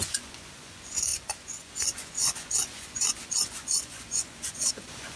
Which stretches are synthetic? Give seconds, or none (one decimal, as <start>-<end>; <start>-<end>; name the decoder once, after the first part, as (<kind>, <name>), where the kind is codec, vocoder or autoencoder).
0.0-5.2 (vocoder, Vocos)

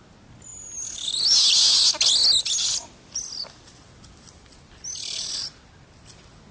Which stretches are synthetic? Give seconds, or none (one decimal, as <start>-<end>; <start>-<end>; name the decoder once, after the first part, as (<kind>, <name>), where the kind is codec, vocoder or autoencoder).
none

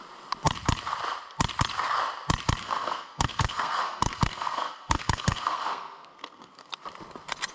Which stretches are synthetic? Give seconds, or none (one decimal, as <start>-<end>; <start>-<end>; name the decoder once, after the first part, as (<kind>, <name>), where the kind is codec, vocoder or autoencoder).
2.6-6.7 (codec, SNAC)

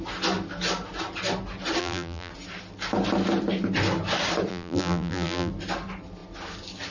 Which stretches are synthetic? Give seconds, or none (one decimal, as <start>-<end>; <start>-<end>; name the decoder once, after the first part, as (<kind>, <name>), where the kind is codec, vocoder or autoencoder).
1.8-2.3 (vocoder, BigVGAN v2); 4.5-5.5